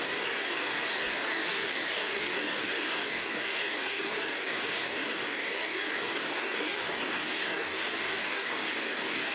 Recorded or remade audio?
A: remade